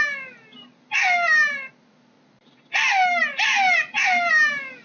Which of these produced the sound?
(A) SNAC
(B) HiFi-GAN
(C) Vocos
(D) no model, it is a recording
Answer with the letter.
D